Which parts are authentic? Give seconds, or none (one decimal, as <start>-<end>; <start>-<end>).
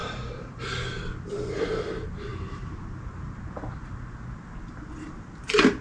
0.6-2.3; 3.8-5.8